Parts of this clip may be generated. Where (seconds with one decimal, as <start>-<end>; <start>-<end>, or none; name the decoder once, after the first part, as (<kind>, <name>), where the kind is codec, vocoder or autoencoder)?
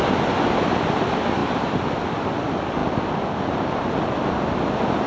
none